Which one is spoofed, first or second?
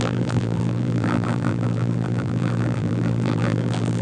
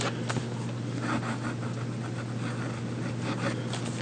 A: first